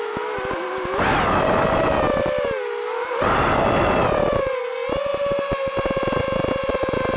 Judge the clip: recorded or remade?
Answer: recorded